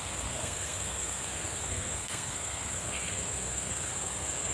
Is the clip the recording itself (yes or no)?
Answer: no